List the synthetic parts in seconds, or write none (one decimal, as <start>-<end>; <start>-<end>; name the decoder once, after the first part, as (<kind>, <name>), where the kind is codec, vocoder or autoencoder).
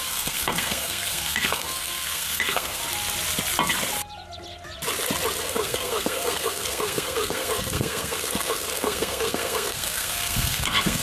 0.0-2.8 (codec, SNAC); 5.4-11.0